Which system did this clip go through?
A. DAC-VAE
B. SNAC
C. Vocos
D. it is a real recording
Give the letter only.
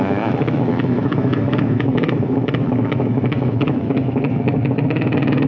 A